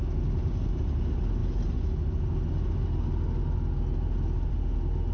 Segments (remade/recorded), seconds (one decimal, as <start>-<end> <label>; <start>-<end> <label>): 0.0-5.1 recorded